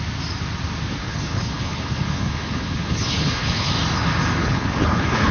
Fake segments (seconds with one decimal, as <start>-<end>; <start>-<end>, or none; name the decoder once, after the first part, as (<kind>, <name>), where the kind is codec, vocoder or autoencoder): 1.0-3.7 (codec, HILCodec); 4.4-5.3